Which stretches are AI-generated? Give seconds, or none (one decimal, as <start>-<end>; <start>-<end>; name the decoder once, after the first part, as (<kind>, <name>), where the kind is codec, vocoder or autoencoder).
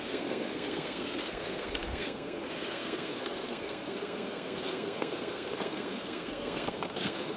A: 0.0-7.4 (codec, SNAC)